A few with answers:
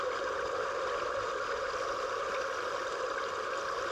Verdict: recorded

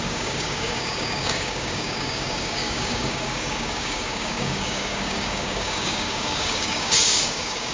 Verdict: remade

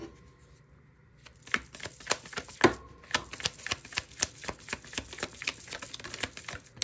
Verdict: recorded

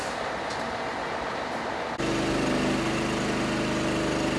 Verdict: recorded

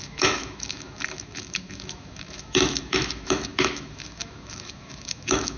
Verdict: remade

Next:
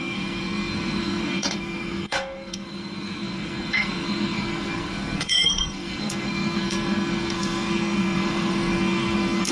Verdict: remade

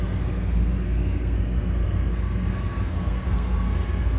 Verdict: remade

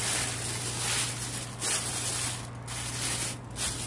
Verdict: recorded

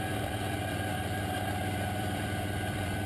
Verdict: remade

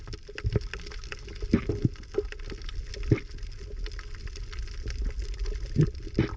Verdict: recorded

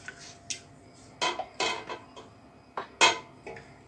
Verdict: recorded